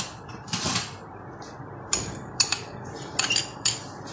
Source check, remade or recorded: remade